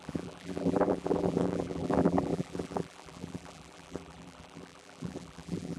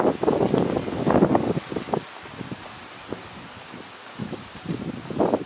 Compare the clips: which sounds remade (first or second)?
first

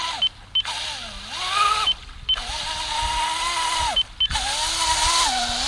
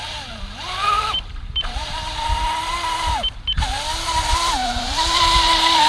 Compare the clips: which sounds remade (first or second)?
second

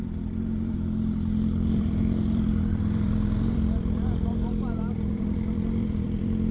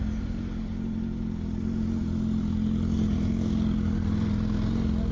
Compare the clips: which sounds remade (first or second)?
first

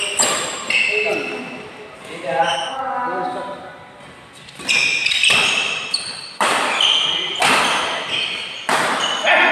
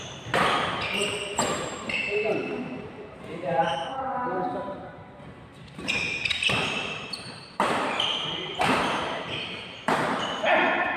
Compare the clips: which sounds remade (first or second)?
second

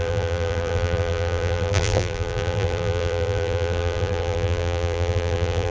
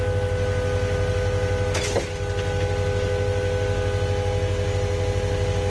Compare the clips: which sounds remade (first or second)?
first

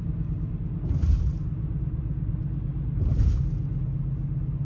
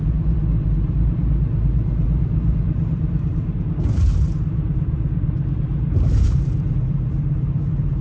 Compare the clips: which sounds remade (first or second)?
second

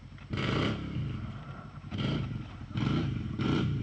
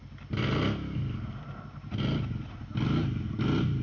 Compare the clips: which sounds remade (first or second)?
first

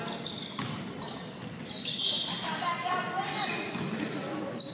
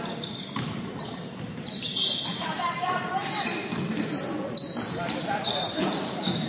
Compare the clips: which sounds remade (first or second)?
second